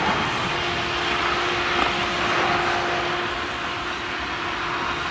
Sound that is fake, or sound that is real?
real